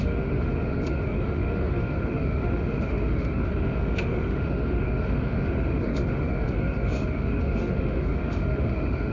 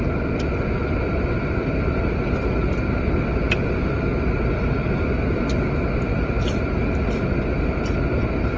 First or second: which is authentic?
second